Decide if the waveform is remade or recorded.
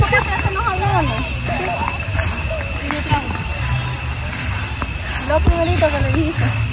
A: recorded